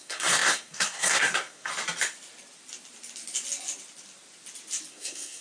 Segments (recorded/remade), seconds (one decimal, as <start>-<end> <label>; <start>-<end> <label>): 0.0-1.7 remade; 1.7-4.9 recorded; 4.9-5.4 remade